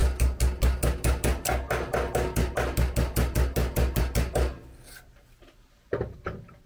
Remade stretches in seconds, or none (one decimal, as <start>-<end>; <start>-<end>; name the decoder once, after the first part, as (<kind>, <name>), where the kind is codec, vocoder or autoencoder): none